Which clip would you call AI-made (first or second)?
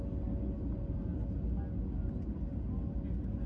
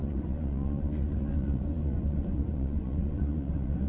second